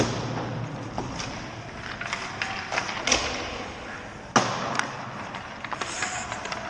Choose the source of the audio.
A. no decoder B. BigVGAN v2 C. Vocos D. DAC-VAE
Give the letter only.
A